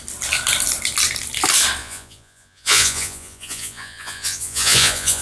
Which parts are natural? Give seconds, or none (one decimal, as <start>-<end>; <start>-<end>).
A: 0.0-1.8